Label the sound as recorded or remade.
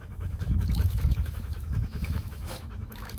remade